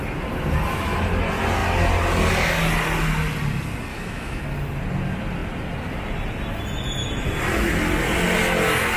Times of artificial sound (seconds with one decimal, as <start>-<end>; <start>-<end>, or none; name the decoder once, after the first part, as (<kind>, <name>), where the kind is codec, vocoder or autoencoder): 3.9-4.4 (autoencoder, DAC-VAE)